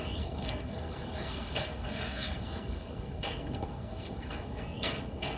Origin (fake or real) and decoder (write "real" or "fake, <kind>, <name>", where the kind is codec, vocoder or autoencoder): fake, codec, SNAC